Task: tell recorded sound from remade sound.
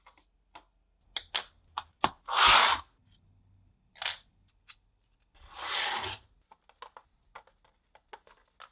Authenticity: recorded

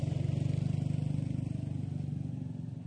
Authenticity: recorded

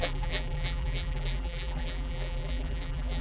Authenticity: remade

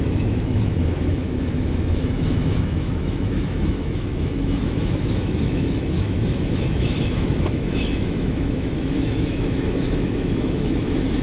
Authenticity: remade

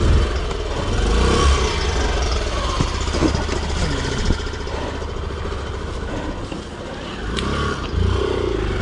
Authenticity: recorded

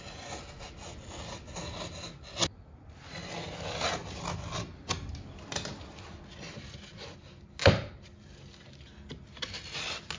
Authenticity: recorded